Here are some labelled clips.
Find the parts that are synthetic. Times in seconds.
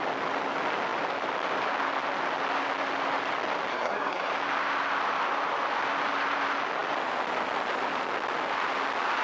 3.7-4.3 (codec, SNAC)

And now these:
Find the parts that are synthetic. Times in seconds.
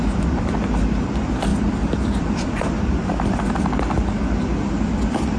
1.5-2.5 (vocoder, BigVGAN v2)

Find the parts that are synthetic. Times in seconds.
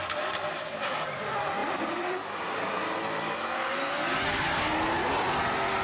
none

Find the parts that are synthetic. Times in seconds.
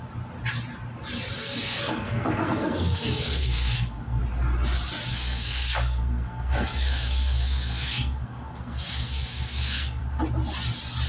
1.4-4.2 (codec, SNAC); 5.1-10.0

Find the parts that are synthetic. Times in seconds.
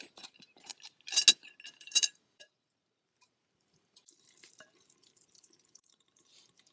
0.0-0.7 (vocoder, BigVGAN v2); 1.8-6.7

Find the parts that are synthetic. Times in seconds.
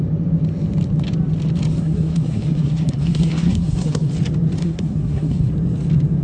1.8-4.1 (codec, SNAC); 4.6-5.5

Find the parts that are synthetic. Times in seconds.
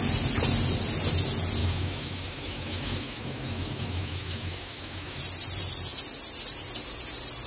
1.6-5.2 (autoencoder, DAC-VAE)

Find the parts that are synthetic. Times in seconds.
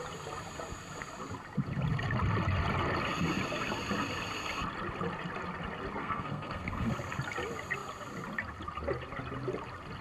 6.0-6.9 (codec, SNAC)